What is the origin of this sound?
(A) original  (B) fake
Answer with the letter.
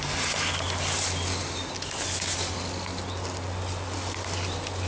A